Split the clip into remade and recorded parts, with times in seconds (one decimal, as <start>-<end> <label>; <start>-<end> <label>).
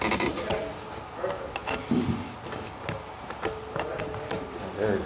0.0-5.1 recorded